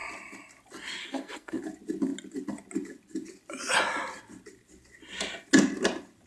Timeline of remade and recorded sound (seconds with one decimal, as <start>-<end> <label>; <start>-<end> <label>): 0.0-1.0 recorded; 1.0-1.6 remade; 1.6-6.3 recorded

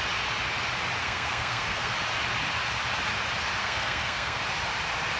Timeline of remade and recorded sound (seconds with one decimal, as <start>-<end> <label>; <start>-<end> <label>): 0.0-1.0 recorded; 1.0-1.9 remade; 1.9-3.6 recorded; 3.6-4.4 remade; 4.4-5.2 recorded